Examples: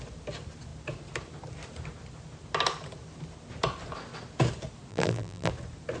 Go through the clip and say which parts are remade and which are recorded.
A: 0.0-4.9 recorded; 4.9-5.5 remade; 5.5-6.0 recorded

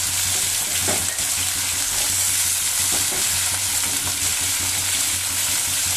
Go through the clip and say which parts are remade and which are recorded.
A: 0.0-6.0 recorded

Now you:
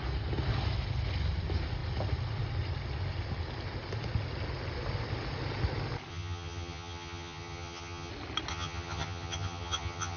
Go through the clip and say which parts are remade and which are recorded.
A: 0.0-6.1 recorded; 6.1-8.1 remade; 8.1-8.5 recorded; 8.5-10.2 remade

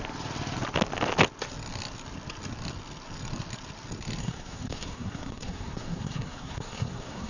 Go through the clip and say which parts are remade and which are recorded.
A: 0.0-4.2 recorded; 4.2-7.3 remade

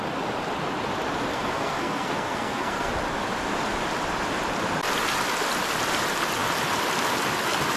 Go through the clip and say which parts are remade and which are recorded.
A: 0.0-1.3 recorded; 1.3-2.9 remade; 2.9-7.8 recorded

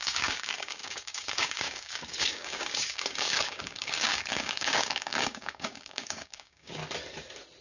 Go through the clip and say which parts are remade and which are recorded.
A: 0.0-6.8 remade; 6.8-7.6 recorded